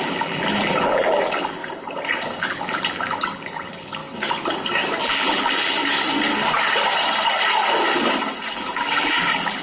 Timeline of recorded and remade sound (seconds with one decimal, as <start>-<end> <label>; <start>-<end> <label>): 0.0-1.6 remade; 1.6-2.4 recorded; 2.4-4.0 remade; 4.0-5.0 recorded; 5.0-5.8 remade; 5.8-8.5 recorded; 8.5-9.6 remade